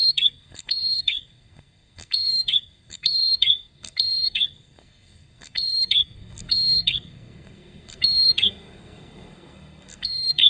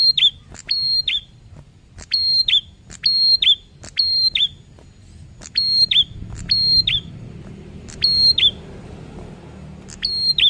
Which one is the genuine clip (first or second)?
second